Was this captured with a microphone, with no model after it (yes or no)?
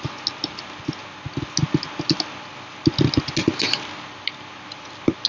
yes